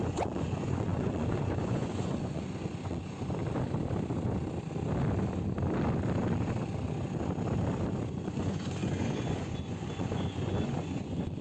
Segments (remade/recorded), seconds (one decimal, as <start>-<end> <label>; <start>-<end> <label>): 0.0-3.4 remade; 3.4-8.1 recorded; 8.1-11.4 remade